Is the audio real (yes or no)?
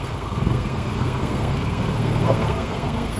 no